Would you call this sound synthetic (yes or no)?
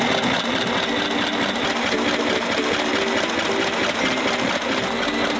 no